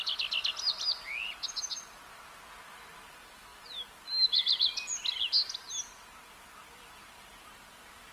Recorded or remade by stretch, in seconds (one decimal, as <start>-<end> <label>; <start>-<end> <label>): 0.0-8.1 recorded